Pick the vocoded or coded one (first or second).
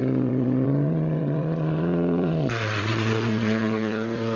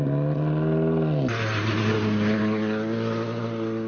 first